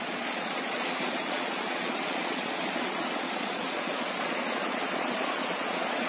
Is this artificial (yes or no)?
yes